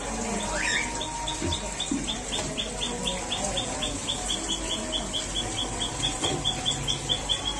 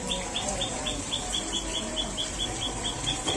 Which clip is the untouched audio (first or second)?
first